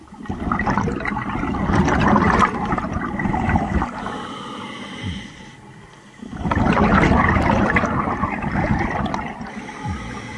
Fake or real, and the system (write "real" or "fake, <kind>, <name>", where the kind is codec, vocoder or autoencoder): real